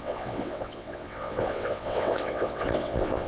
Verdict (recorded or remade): remade